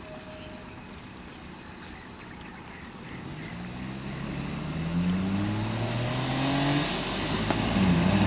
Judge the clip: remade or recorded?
recorded